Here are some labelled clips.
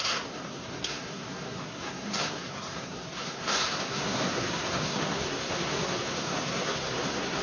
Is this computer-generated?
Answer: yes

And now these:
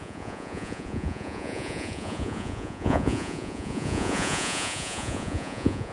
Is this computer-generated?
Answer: yes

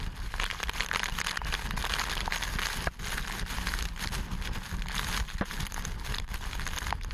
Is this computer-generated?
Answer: no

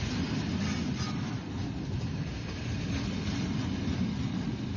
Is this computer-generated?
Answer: no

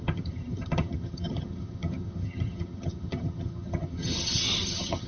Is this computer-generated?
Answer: yes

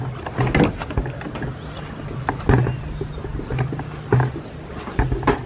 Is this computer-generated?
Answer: no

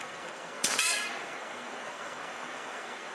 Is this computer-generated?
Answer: yes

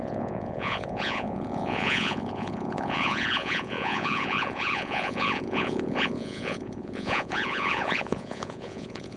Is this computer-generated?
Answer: yes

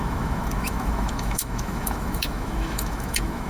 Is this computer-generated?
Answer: yes